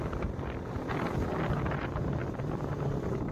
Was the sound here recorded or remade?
recorded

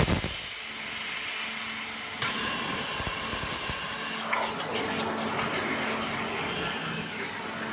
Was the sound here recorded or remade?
recorded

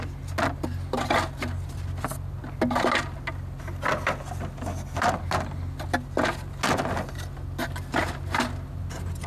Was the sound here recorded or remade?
recorded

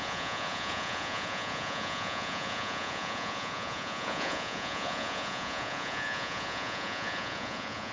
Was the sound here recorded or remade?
remade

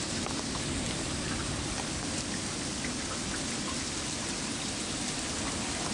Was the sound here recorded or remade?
recorded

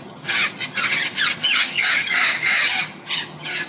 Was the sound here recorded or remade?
remade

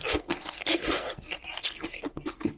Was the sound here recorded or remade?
remade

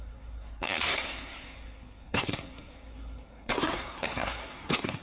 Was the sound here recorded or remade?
remade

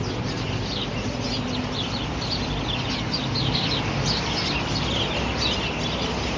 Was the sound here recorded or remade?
recorded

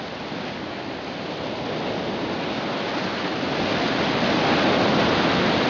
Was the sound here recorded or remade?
recorded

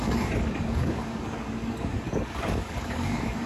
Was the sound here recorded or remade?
remade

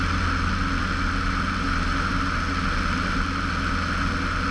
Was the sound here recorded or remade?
recorded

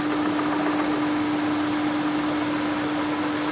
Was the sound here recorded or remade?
recorded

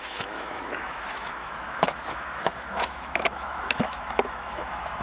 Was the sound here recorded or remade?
remade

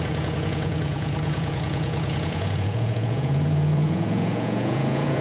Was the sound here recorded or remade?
remade